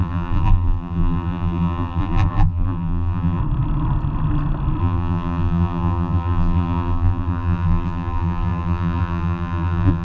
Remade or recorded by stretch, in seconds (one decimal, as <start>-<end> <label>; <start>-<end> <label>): 0.0-3.4 remade; 3.4-4.8 recorded; 4.8-10.0 remade